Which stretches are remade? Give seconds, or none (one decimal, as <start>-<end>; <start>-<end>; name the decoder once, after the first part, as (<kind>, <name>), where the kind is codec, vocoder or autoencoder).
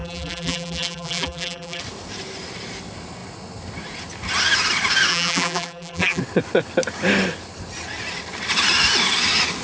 0.0-1.8 (vocoder, BigVGAN v2); 5.1-6.2